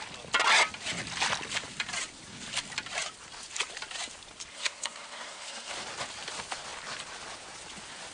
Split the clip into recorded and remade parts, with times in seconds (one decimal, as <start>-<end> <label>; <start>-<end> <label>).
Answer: 0.0-4.5 recorded; 4.5-5.7 remade; 5.7-8.1 recorded